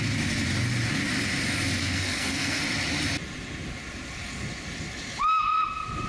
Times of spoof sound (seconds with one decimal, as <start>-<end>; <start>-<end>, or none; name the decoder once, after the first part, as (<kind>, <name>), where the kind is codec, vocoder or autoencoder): 1.8-2.6 (codec, SNAC)